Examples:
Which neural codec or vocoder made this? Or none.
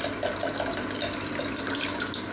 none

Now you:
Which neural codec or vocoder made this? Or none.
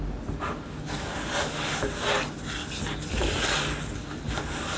none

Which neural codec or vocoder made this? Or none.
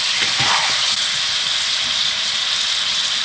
none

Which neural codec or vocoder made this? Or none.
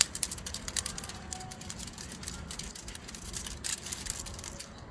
none